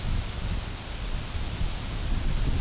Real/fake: real